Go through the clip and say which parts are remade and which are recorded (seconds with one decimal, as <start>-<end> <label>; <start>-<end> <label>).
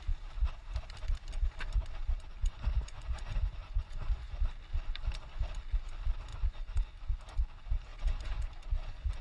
0.0-2.4 recorded; 2.4-4.4 remade; 4.4-6.3 recorded; 6.3-7.2 remade; 7.2-7.9 recorded; 7.9-9.2 remade